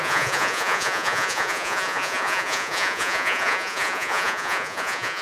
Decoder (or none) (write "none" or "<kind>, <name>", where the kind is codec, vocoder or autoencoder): vocoder, Vocos